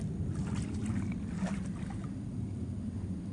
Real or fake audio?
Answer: real